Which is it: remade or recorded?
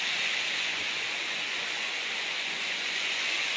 remade